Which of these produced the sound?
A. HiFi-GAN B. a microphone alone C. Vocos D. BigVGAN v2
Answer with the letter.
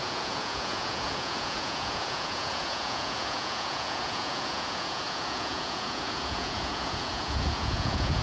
C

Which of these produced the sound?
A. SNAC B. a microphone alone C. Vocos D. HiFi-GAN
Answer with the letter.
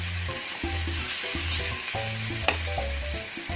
B